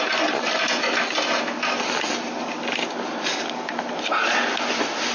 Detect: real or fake real